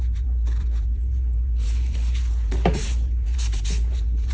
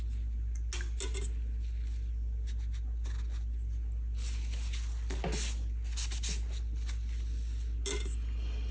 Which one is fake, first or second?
first